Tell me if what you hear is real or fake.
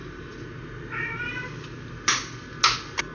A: real